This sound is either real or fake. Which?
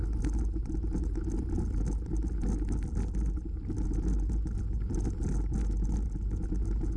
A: real